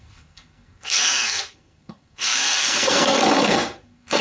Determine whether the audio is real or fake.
fake